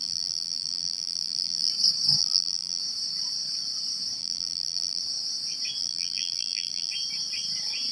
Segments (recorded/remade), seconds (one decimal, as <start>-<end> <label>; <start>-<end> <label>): 0.0-1.7 remade; 1.7-2.2 recorded; 2.2-2.8 remade; 2.8-4.2 recorded; 4.2-5.0 remade; 5.0-5.8 recorded; 5.8-6.9 remade; 6.9-7.9 recorded